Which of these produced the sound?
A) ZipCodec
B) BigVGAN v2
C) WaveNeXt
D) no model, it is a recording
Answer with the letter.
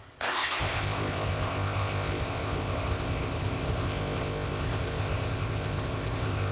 A